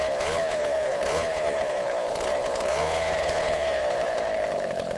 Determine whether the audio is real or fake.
fake